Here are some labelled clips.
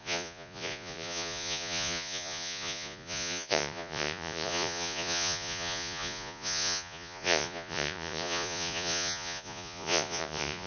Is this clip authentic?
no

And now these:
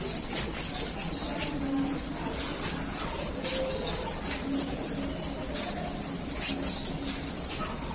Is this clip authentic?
yes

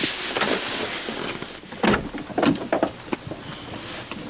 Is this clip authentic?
yes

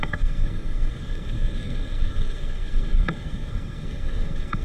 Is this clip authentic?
no